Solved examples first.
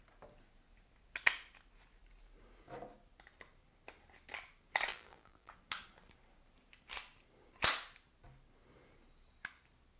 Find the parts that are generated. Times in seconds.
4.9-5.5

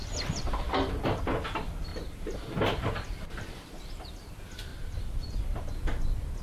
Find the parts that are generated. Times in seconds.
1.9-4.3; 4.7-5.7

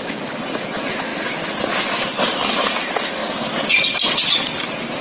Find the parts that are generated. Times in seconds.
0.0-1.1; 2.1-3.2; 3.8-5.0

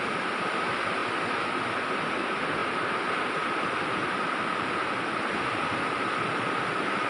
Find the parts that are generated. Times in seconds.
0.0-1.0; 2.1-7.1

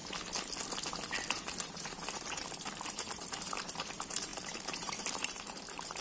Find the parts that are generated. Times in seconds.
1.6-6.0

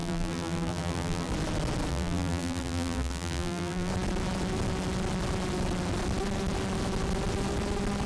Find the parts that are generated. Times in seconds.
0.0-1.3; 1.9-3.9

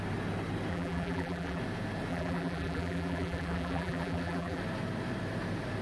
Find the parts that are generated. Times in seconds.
0.7-1.6; 2.1-4.6

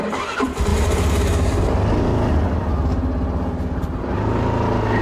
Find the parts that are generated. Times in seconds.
none